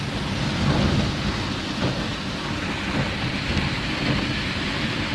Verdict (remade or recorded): recorded